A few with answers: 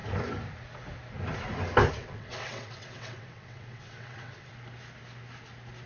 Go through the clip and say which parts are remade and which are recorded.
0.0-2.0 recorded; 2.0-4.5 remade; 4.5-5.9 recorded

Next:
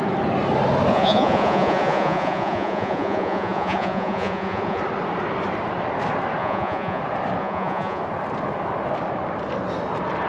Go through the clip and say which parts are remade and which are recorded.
0.0-0.9 recorded; 0.9-4.8 remade; 4.8-6.4 recorded; 6.4-7.0 remade; 7.0-7.4 recorded; 7.4-8.0 remade; 8.0-10.3 recorded

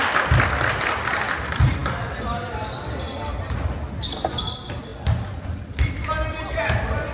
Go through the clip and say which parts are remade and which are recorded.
0.0-7.1 recorded

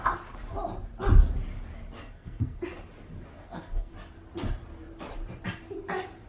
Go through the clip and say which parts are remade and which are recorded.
0.0-2.0 recorded; 2.0-2.6 remade; 2.6-3.3 recorded; 3.3-3.9 remade; 3.9-6.3 recorded

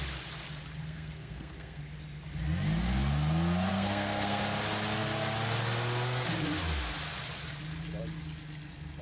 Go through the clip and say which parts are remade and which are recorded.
0.0-0.8 recorded; 0.8-1.8 remade; 1.8-3.7 recorded; 3.7-4.4 remade; 4.4-9.0 recorded